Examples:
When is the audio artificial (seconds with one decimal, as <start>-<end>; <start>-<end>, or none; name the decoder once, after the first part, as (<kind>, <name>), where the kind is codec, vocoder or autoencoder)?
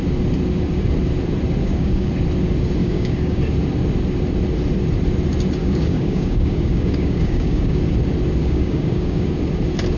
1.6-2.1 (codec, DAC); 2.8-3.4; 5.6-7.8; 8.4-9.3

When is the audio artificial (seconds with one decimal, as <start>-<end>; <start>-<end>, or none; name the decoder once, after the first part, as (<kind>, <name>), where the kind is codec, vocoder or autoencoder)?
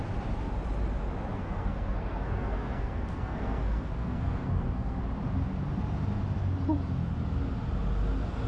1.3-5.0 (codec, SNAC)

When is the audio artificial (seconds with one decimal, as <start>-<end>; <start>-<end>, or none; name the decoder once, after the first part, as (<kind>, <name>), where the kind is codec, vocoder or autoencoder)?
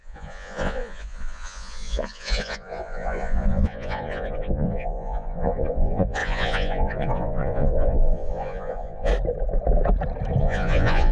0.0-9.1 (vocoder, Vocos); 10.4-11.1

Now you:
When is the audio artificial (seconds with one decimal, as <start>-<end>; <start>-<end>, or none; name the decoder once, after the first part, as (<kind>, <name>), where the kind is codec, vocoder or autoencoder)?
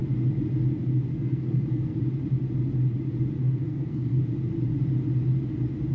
1.1-2.0 (codec, SNAC); 3.4-4.2